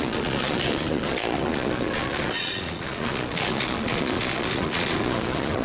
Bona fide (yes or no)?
no